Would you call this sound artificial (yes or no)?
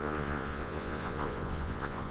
yes